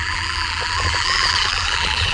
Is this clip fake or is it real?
fake